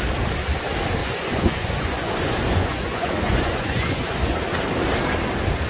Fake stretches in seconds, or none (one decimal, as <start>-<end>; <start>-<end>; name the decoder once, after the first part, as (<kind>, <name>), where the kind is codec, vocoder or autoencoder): 1.0-4.4 (vocoder, Vocos)

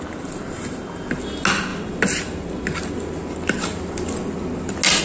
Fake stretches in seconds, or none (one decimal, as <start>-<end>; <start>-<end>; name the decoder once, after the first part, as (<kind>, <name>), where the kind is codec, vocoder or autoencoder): none

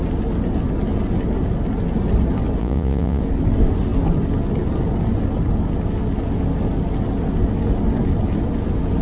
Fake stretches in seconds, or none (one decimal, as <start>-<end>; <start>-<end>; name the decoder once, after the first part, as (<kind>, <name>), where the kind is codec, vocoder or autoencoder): 2.6-3.2 (vocoder, Vocos)

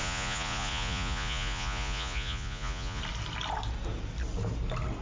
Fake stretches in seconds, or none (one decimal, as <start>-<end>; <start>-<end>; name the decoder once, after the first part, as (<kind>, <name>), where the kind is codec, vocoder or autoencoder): 0.0-3.0 (vocoder, Vocos)

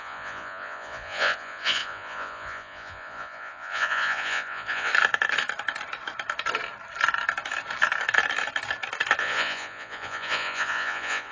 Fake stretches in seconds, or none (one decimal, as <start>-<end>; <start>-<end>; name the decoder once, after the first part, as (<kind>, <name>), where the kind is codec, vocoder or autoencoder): 0.0-4.9 (vocoder, Vocos); 9.2-11.3